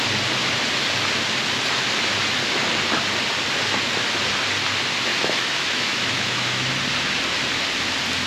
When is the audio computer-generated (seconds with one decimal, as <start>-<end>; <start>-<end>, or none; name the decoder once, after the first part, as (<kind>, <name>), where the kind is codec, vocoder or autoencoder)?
5.1-6.7 (autoencoder, DAC-VAE)